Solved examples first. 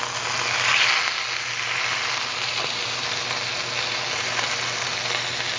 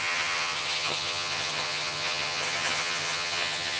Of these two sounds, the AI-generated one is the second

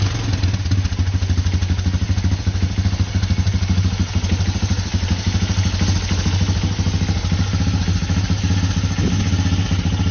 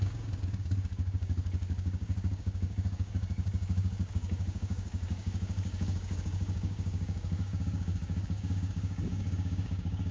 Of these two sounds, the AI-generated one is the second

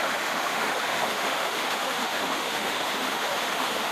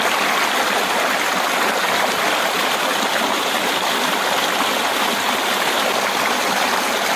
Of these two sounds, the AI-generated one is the first